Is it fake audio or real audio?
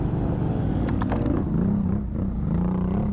real